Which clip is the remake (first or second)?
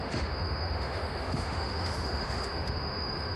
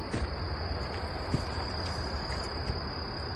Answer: first